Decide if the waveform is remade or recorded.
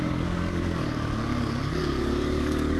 remade